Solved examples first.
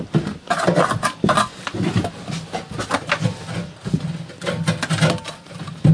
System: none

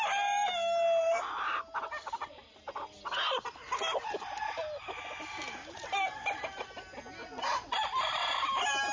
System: none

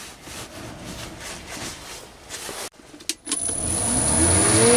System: none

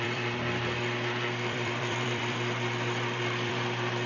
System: vocoder, BigVGAN v2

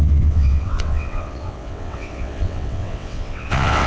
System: vocoder, WaveNeXt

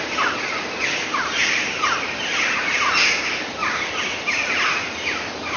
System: none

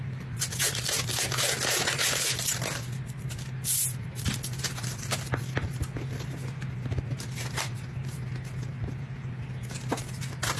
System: none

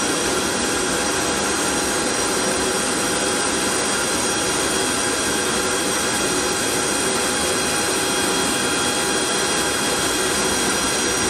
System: none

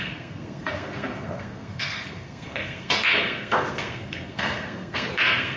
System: codec, SNAC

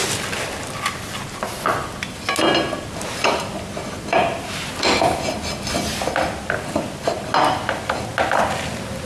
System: none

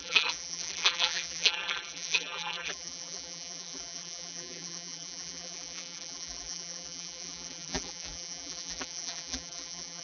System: vocoder, BigVGAN v2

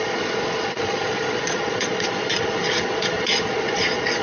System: vocoder, Vocos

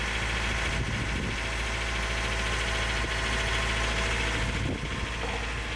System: none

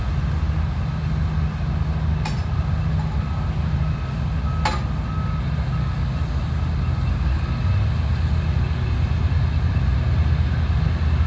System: none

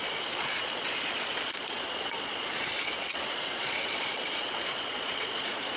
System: vocoder, Vocos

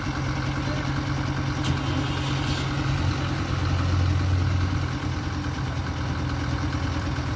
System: none